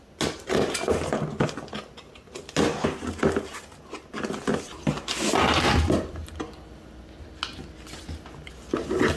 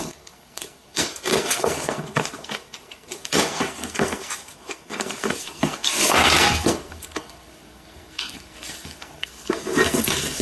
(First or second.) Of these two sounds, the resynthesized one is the second